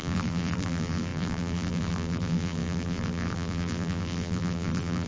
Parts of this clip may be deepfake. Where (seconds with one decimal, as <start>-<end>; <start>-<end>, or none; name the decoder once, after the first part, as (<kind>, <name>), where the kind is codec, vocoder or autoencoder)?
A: 0.0-5.1 (vocoder, BigVGAN v2)